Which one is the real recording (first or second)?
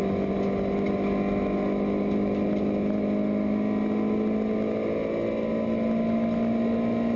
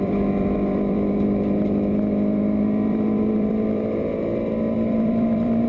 first